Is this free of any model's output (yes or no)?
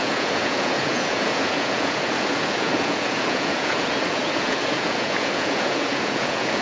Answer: no